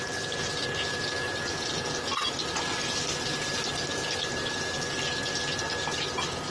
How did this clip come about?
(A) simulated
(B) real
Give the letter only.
B